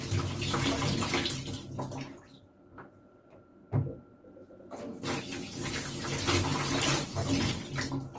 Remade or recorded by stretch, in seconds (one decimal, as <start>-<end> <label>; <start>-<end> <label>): 0.0-8.2 recorded